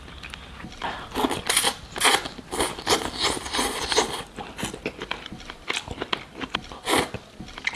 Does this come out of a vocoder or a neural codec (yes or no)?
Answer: no